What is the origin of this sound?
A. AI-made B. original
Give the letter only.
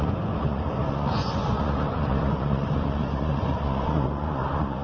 A